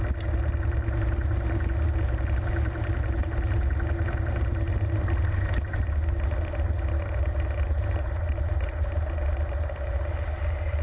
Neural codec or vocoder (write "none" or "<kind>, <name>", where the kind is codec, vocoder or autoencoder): none